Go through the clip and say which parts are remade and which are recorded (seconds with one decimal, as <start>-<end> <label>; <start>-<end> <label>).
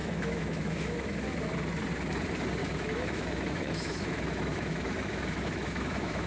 0.0-1.4 remade; 1.4-2.6 recorded; 2.6-6.3 remade